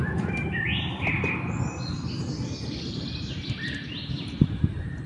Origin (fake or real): real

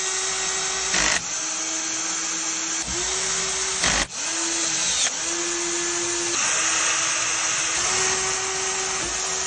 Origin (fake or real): real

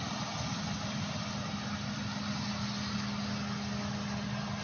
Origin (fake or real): real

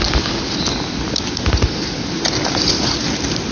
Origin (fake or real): real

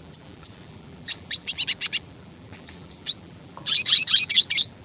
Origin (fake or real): fake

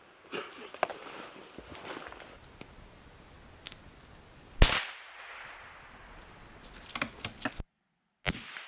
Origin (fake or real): real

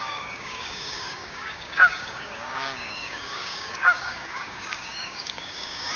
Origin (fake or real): fake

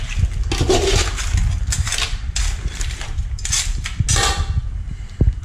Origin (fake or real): real